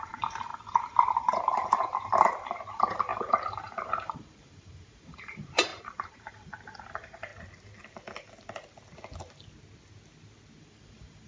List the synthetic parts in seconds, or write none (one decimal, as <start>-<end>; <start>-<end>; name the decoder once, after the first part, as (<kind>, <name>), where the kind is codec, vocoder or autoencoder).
0.0-7.3 (vocoder, BigVGAN v2); 10.6-11.3